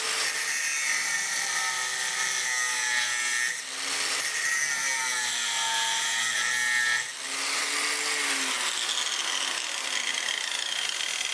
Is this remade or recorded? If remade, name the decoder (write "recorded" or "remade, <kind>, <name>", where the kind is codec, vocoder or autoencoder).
recorded